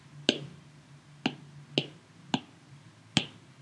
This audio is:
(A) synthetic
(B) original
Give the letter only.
B